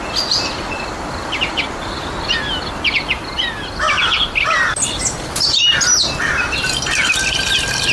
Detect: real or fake real